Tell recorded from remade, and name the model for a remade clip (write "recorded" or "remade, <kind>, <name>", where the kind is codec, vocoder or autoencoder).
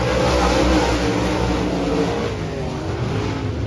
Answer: recorded